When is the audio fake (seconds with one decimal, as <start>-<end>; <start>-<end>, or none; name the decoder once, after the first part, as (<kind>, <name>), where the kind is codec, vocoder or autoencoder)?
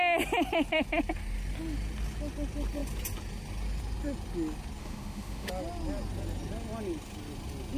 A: 4.8-5.5 (autoencoder, DAC-VAE)